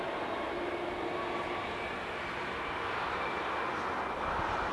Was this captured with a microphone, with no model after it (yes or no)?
yes